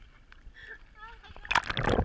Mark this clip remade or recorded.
recorded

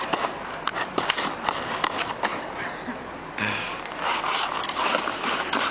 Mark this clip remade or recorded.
recorded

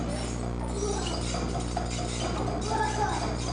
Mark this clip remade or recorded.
recorded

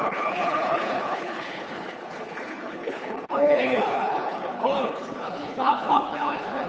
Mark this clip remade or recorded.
remade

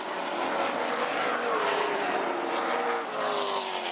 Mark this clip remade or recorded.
recorded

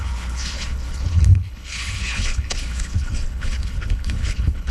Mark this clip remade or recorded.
remade